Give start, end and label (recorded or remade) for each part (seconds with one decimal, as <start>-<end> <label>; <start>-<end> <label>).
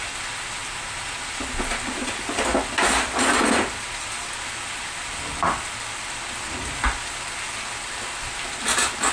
0.0-9.1 recorded